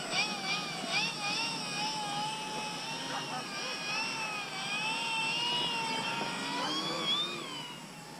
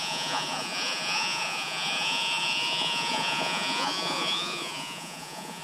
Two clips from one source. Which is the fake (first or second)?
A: second